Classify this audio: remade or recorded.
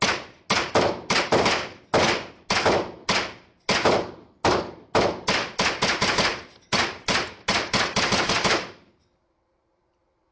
recorded